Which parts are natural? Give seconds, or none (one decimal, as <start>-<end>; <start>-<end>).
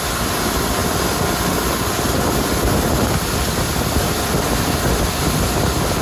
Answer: 0.0-6.0